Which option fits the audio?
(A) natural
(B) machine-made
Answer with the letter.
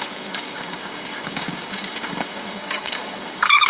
B